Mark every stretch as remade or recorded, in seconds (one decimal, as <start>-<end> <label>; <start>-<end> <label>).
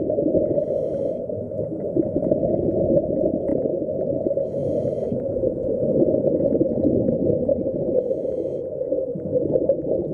0.0-3.5 recorded; 3.5-4.1 remade; 4.1-4.6 recorded; 4.6-6.2 remade; 6.2-7.5 recorded; 7.5-8.4 remade; 8.4-10.1 recorded